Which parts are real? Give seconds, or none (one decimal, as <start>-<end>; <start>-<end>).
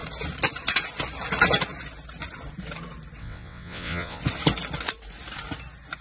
0.0-3.2; 4.2-6.0